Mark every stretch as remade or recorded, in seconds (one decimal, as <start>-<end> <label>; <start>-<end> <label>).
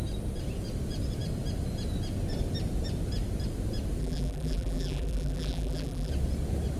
0.0-4.0 recorded; 4.0-6.1 remade; 6.1-6.8 recorded